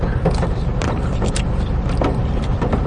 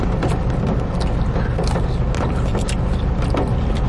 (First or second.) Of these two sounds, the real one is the second